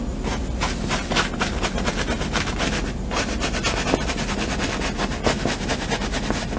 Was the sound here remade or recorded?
recorded